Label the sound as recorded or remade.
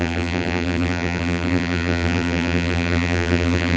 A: remade